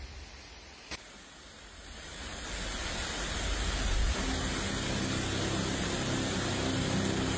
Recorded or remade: recorded